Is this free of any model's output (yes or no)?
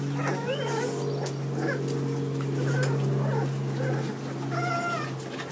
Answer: yes